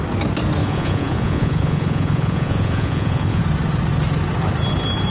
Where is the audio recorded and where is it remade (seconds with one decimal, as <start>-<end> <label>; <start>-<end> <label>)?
0.0-0.6 recorded; 0.6-3.4 remade; 3.4-5.1 recorded